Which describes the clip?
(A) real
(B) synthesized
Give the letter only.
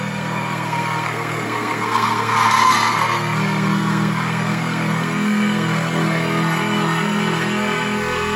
B